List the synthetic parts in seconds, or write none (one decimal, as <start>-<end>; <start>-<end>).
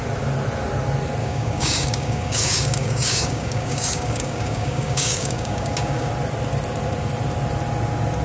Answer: 1.2-6.1